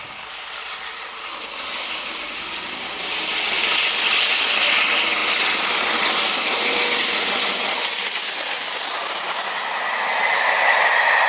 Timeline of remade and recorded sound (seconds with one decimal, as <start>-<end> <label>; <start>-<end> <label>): 0.0-11.3 recorded